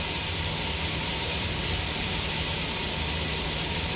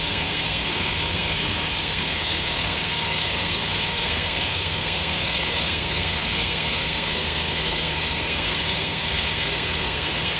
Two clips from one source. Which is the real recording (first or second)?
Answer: first